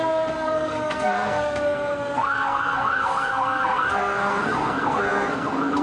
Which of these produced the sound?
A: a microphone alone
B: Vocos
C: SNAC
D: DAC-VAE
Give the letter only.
C